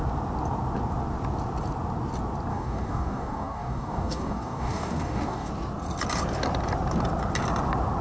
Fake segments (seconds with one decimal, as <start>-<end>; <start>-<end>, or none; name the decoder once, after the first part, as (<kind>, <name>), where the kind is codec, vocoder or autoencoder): 2.5-5.5 (codec, DAC)